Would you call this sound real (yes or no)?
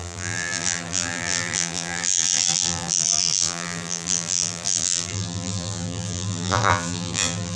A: no